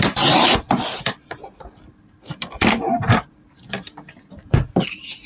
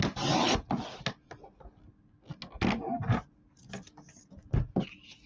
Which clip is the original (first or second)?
second